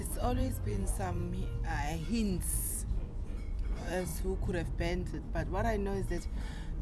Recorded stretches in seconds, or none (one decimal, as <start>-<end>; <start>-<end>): 1.2-2.8; 4.1-6.2